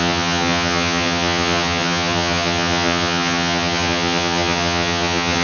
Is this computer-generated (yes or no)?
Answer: yes